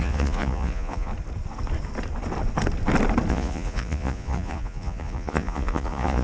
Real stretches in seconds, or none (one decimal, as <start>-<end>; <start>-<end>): 1.1-3.3